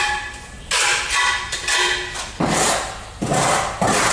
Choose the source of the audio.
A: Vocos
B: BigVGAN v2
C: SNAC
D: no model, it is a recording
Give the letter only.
D